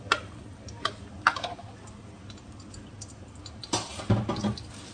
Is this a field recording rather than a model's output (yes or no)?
yes